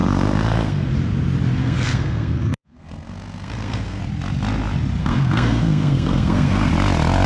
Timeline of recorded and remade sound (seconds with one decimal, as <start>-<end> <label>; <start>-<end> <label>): 0.0-0.9 remade; 0.9-1.6 recorded; 1.6-4.0 remade; 4.0-5.0 recorded; 5.0-6.7 remade; 6.7-7.3 recorded